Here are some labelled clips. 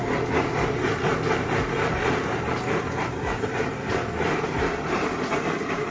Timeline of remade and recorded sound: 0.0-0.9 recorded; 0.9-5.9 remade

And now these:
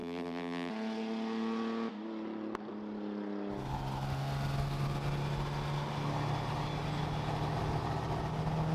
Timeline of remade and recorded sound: 0.0-0.7 remade; 0.7-8.7 recorded

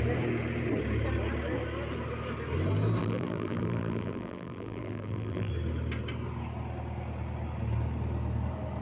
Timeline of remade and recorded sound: 0.0-3.0 recorded; 3.0-5.5 remade; 5.5-8.8 recorded

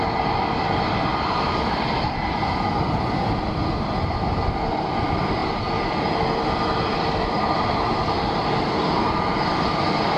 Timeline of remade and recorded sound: 0.0-1.1 remade; 1.1-1.7 recorded; 1.7-10.2 remade

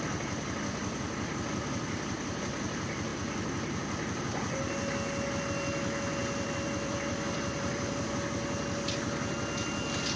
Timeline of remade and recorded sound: 0.0-6.2 recorded; 6.2-8.1 remade; 8.1-10.2 recorded

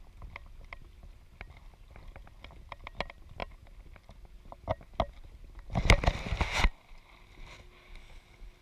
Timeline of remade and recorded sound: 0.0-8.6 recorded

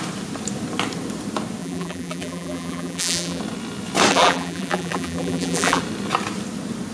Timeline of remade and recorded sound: 0.0-1.6 recorded; 1.6-3.4 remade; 3.4-4.1 recorded; 4.1-5.8 remade; 5.8-6.9 recorded